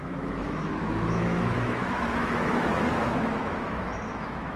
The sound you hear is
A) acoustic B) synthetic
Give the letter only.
B